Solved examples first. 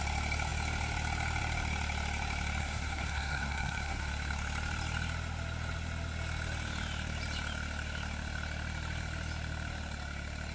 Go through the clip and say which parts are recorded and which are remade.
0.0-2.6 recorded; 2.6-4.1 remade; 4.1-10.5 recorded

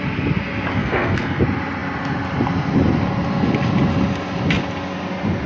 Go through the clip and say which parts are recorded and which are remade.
0.0-0.7 recorded; 0.7-1.4 remade; 1.4-5.5 recorded

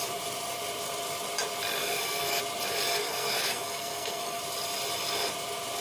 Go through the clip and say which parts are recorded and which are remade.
0.0-1.8 recorded; 1.8-2.4 remade; 2.4-3.0 recorded; 3.0-4.4 remade; 4.4-5.8 recorded

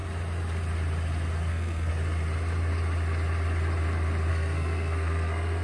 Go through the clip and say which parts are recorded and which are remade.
0.0-1.5 recorded; 1.5-1.9 remade; 1.9-4.3 recorded; 4.3-5.6 remade